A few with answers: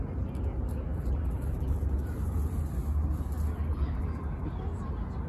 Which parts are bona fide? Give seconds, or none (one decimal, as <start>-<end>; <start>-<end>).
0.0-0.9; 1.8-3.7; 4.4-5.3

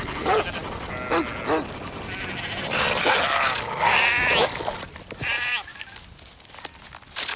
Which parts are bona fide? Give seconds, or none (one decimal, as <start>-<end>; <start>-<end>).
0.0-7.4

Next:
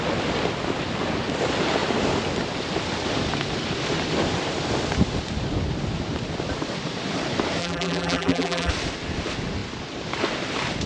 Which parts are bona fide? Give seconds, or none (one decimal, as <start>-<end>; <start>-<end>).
0.0-7.6; 8.7-10.9

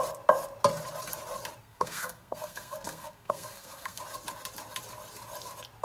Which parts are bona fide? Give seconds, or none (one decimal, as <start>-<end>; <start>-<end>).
0.0-1.6; 4.0-5.8